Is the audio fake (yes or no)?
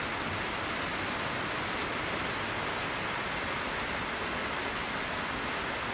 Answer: no